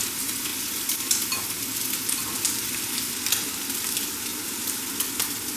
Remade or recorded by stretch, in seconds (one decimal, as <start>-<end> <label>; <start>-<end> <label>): 0.0-4.3 recorded; 4.3-4.9 remade; 4.9-5.6 recorded